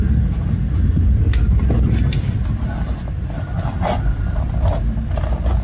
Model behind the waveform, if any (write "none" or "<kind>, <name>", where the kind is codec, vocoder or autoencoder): none